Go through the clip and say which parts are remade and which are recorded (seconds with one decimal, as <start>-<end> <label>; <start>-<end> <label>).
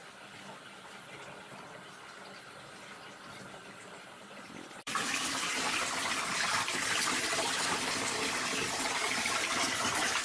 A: 0.0-3.4 recorded; 3.4-5.8 remade; 5.8-8.7 recorded; 8.7-10.2 remade